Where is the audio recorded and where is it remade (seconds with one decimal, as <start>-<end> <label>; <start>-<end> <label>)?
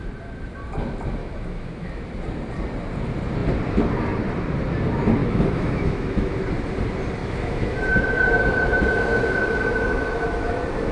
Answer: 0.0-1.2 recorded; 1.2-2.0 remade; 2.0-5.2 recorded; 5.2-6.4 remade; 6.4-7.2 recorded; 7.2-10.5 remade; 10.5-10.9 recorded